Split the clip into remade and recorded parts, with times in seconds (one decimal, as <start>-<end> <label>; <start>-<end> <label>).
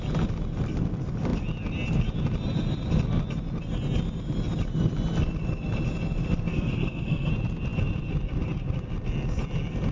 0.0-6.5 recorded; 6.5-7.3 remade; 7.3-9.9 recorded